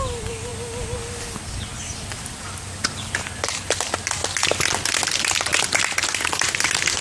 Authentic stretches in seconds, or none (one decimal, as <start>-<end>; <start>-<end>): 0.5-1.2; 4.2-6.2